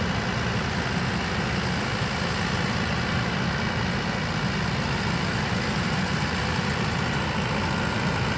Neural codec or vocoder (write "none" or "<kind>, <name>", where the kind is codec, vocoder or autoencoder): none